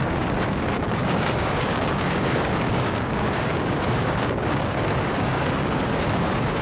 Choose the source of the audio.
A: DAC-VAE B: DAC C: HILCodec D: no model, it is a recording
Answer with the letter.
B